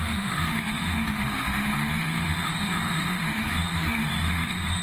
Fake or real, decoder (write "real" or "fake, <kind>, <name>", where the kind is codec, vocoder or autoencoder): fake, autoencoder, DAC-VAE